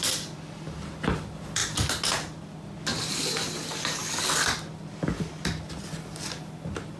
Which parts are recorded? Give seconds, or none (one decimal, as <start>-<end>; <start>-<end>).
0.0-7.0